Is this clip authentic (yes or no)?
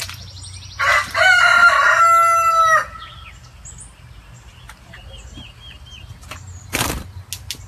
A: yes